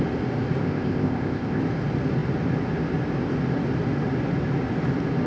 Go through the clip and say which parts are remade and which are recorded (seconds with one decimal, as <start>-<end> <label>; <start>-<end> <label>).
0.0-0.6 recorded; 0.6-1.6 remade; 1.6-5.3 recorded